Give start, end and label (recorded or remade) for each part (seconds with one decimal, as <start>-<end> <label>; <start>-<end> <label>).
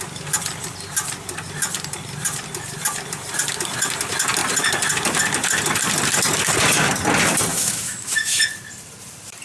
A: 0.0-7.5 recorded; 7.5-8.4 remade; 8.4-9.4 recorded